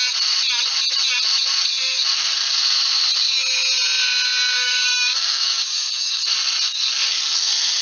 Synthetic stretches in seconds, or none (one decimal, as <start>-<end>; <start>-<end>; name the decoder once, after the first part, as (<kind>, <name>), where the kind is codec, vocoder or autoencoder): 4.6-6.2 (codec, DAC)